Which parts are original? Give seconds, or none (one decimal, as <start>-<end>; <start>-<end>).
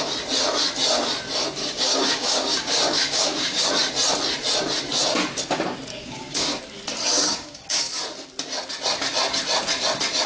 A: 0.0-1.6; 3.7-5.9; 6.6-7.1; 8.0-10.3